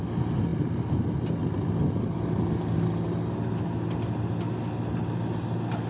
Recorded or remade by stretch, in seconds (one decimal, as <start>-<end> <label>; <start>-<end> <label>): 0.0-5.9 recorded